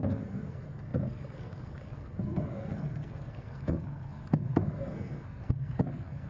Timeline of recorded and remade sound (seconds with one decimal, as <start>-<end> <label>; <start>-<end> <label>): 0.0-6.3 remade